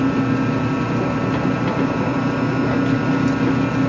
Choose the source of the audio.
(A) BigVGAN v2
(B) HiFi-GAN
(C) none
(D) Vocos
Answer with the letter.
C